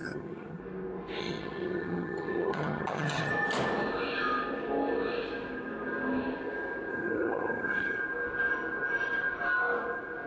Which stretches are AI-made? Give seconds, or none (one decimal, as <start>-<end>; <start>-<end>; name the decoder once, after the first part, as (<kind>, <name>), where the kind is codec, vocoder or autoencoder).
0.0-0.6 (vocoder, HiFi-GAN); 1.2-3.3; 6.9-8.0